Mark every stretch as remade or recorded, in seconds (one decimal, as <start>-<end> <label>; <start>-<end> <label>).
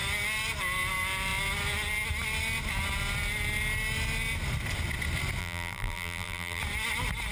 0.0-5.4 recorded; 5.4-6.6 remade; 6.6-7.3 recorded